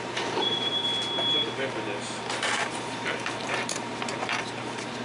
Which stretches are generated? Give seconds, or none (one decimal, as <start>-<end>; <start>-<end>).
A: 0.0-0.8; 2.3-5.0